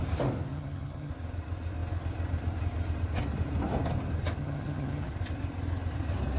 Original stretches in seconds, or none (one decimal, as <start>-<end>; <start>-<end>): 0.0-0.5; 1.1-4.4; 5.1-6.4